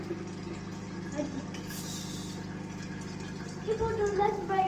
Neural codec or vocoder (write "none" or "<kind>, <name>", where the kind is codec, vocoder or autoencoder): none